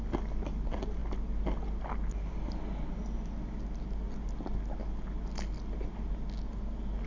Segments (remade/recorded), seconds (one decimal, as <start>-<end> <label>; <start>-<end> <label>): 0.0-7.1 recorded